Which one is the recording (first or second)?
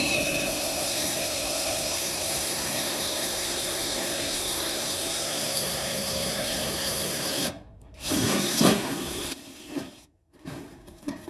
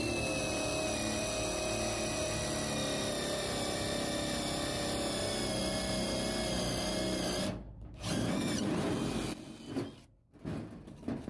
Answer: second